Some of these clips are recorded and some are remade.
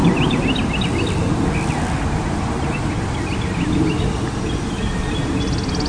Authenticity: recorded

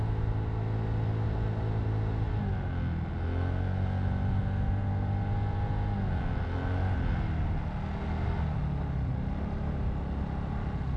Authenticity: recorded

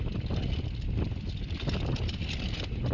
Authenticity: recorded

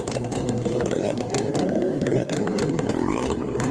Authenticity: remade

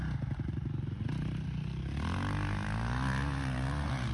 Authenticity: recorded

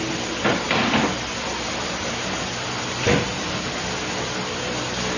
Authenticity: recorded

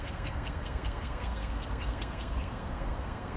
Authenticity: remade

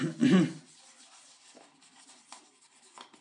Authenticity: recorded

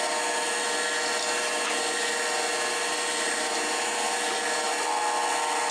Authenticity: recorded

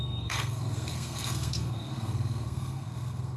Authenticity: remade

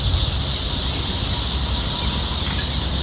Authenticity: recorded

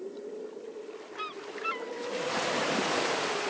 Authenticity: recorded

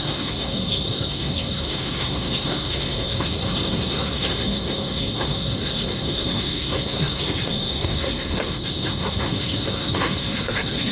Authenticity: remade